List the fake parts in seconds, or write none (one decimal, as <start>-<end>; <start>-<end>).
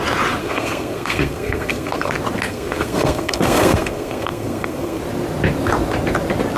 0.4-2.1; 2.5-5.0